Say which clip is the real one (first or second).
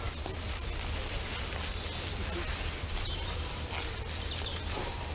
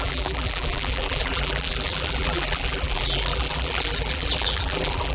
first